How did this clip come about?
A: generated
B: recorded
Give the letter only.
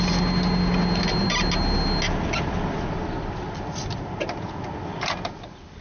B